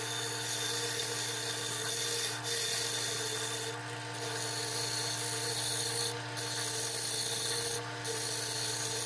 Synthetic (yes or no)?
no